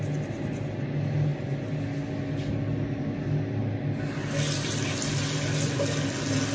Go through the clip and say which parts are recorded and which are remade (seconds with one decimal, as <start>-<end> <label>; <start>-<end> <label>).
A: 0.0-6.5 recorded

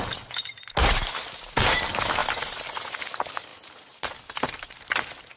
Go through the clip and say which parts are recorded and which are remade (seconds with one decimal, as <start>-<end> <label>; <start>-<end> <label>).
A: 0.0-5.4 recorded

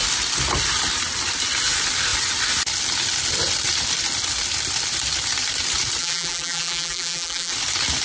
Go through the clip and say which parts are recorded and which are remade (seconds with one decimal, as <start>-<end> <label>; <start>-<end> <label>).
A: 0.0-6.0 recorded; 6.0-7.5 remade; 7.5-8.0 recorded

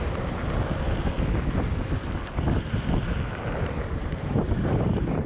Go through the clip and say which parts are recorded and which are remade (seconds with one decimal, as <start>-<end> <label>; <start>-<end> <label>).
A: 0.0-0.4 remade; 0.4-3.6 recorded; 3.6-5.3 remade

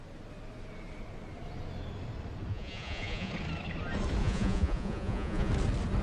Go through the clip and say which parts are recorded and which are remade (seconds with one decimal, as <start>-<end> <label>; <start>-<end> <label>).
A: 0.0-2.5 recorded; 2.5-3.3 remade; 3.3-4.2 recorded; 4.2-5.5 remade; 5.5-6.0 recorded

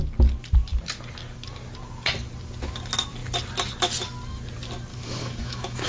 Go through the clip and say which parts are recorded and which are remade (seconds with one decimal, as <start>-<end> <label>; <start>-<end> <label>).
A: 0.0-4.9 recorded; 4.9-5.9 remade